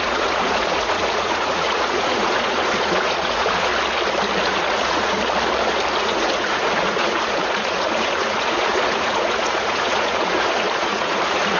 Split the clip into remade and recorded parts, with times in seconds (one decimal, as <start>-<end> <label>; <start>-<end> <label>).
0.0-3.7 remade; 3.7-4.4 recorded; 4.4-5.2 remade; 5.2-6.0 recorded; 6.0-11.6 remade